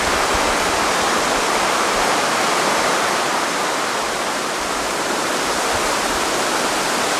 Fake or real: real